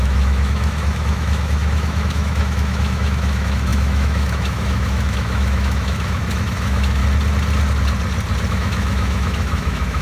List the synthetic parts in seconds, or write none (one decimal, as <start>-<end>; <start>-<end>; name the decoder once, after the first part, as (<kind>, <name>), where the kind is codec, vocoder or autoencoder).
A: 0.0-7.0 (autoencoder, DAC-VAE); 8.5-10.0